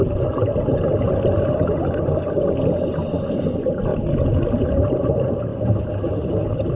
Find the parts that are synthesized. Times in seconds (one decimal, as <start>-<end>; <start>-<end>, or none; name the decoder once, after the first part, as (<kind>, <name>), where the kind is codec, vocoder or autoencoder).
0.0-3.9 (vocoder, BigVGAN v2); 4.5-5.5